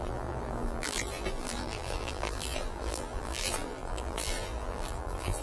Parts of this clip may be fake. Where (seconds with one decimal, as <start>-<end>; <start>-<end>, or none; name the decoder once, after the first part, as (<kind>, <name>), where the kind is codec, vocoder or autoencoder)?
0.0-5.4 (vocoder, BigVGAN v2)